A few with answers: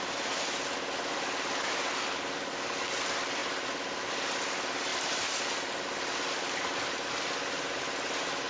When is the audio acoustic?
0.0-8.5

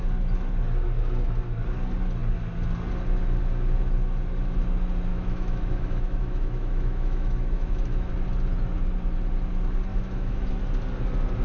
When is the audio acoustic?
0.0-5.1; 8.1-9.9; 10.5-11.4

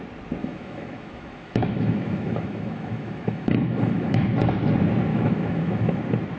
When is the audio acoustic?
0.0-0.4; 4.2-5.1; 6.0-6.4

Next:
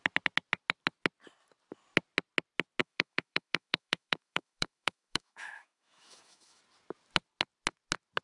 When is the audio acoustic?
0.0-2.8; 6.6-8.2